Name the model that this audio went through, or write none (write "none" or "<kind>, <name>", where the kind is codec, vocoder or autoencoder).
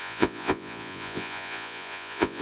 vocoder, Vocos